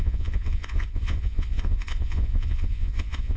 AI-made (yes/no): yes